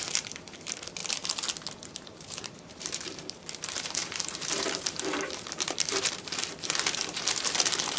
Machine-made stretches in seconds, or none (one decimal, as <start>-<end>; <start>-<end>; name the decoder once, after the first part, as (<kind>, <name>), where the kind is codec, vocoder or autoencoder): 0.0-1.0 (vocoder, BigVGAN v2); 1.9-8.0